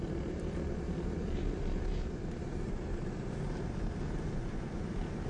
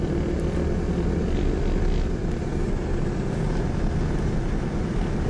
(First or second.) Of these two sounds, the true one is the second